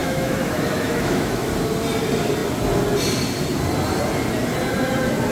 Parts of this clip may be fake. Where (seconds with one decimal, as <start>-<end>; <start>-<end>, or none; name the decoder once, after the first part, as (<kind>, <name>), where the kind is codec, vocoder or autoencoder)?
0.0-1.5 (autoencoder, DAC-VAE)